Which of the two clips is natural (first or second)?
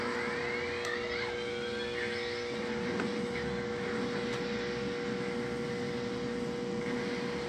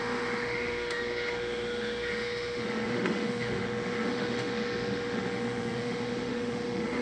first